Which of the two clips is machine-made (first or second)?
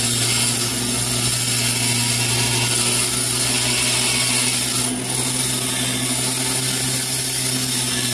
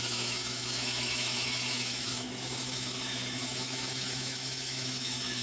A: second